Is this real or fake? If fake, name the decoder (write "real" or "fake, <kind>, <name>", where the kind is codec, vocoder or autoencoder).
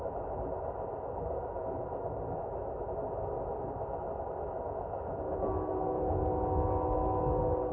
real